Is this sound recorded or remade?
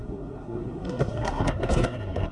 remade